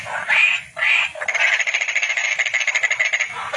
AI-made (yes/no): no